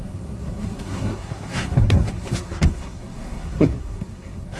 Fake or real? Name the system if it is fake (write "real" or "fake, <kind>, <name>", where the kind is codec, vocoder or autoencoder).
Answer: fake, codec, SNAC